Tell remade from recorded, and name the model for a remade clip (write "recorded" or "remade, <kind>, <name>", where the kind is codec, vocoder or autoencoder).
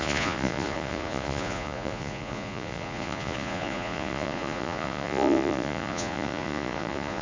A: remade, vocoder, Vocos